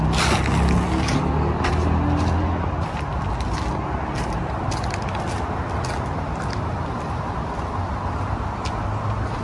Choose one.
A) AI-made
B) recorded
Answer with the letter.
B